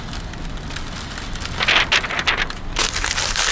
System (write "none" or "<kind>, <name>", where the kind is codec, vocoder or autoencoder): none